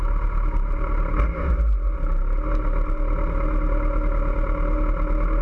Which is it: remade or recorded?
recorded